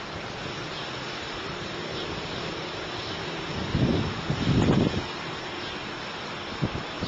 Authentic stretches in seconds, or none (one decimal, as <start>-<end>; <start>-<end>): 0.0-7.1